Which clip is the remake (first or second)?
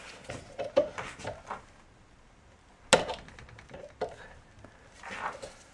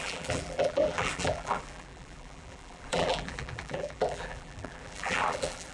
second